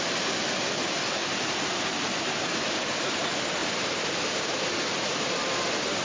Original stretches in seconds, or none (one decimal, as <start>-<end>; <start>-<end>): 0.0-1.2; 3.1-3.6; 4.6-6.0